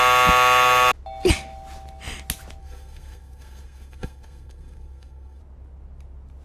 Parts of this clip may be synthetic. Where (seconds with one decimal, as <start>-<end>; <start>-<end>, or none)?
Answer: 2.6-5.4